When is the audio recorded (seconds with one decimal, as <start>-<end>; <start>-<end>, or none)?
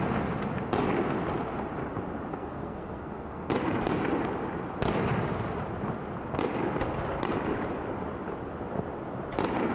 0.0-2.3; 3.5-9.7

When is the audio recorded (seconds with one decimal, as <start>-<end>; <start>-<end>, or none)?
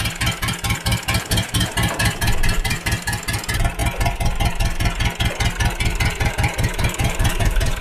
3.8-6.3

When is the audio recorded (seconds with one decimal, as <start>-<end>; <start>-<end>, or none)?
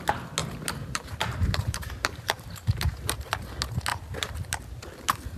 0.0-0.4; 3.3-3.9; 4.6-5.4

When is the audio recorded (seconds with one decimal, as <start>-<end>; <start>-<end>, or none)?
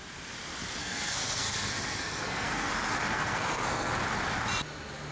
0.0-0.8; 2.7-3.1; 3.9-5.1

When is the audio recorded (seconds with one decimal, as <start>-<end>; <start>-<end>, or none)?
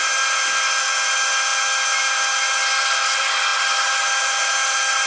0.0-5.1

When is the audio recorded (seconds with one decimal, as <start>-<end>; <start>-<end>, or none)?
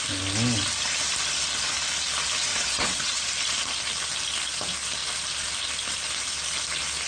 0.0-2.5; 3.2-7.1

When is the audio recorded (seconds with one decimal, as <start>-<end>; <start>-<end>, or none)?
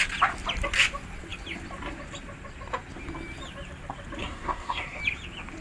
0.0-4.2; 5.0-5.6